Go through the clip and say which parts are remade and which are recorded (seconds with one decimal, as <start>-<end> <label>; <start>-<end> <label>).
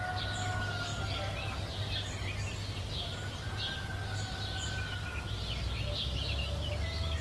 0.0-7.2 recorded